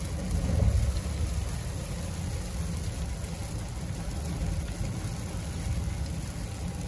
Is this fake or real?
real